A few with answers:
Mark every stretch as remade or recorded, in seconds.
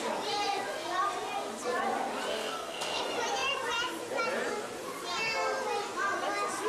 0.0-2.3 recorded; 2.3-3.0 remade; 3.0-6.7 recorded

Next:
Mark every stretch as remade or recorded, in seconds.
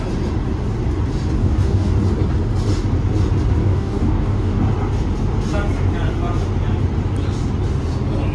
0.0-1.4 recorded; 1.4-1.9 remade; 1.9-3.6 recorded; 3.6-4.6 remade; 4.6-8.3 recorded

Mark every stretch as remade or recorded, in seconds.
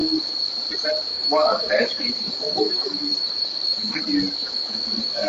0.0-0.5 remade; 0.5-1.1 recorded; 1.1-4.0 remade; 4.0-4.4 recorded; 4.4-5.3 remade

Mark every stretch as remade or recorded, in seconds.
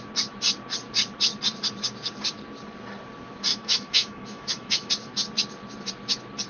0.0-3.5 recorded; 3.5-4.9 remade; 4.9-6.5 recorded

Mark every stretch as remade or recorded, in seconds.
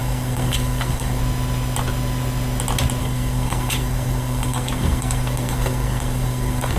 0.0-1.2 remade; 1.2-3.0 recorded; 3.0-6.8 remade